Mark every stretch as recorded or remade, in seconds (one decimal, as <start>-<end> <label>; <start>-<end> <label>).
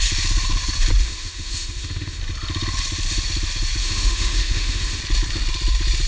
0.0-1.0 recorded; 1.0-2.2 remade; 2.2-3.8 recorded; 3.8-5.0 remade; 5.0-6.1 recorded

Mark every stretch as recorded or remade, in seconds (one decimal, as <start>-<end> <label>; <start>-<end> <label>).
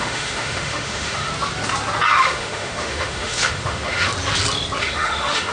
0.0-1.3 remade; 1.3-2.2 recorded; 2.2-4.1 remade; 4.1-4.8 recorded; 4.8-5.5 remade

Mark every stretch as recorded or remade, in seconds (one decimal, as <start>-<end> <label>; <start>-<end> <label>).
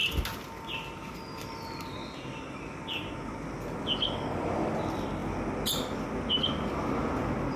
0.0-7.6 recorded